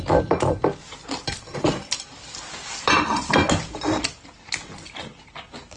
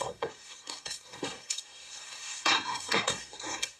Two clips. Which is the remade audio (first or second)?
second